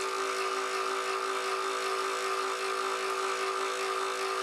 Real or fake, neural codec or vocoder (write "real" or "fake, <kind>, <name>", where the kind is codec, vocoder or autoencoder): real